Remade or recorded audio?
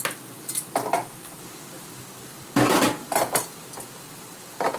recorded